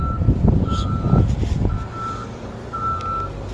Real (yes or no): yes